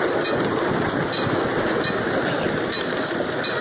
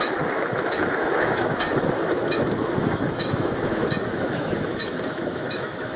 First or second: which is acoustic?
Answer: first